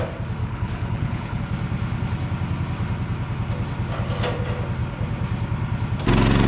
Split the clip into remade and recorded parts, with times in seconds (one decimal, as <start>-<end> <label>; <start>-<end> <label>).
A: 0.0-0.4 recorded; 0.4-1.4 remade; 1.4-6.5 recorded